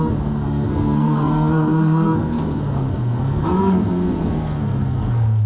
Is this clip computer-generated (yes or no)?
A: yes